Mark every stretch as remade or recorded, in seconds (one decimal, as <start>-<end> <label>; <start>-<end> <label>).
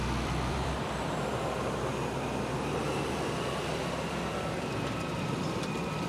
0.0-1.9 remade; 1.9-2.7 recorded; 2.7-6.1 remade